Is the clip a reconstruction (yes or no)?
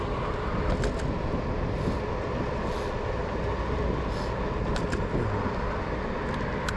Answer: no